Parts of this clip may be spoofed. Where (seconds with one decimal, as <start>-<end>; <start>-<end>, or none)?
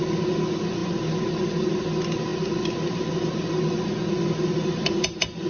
none